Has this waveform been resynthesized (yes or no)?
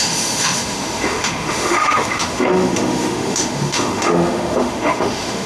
yes